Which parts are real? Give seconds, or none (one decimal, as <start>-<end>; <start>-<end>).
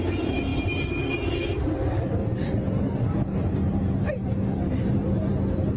2.2-4.7